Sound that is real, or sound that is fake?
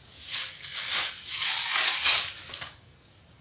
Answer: fake